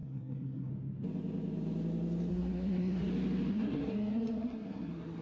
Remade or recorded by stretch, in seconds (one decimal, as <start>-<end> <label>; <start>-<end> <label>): 0.0-0.7 remade; 0.7-2.3 recorded; 2.3-3.1 remade; 3.1-3.5 recorded; 3.5-5.2 remade